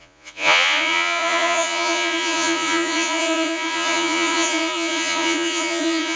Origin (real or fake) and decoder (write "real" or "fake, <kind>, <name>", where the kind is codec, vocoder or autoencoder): fake, vocoder, Vocos